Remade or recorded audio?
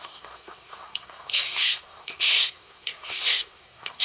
remade